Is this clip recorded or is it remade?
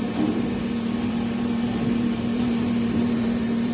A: remade